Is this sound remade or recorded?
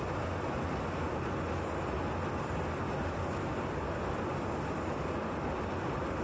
recorded